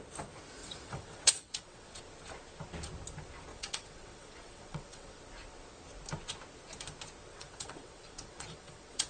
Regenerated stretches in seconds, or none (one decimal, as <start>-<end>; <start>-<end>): 0.6-2.0; 3.5-5.2; 7.3-9.1